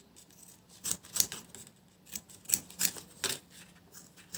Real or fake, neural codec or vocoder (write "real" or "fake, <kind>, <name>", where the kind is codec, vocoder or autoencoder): real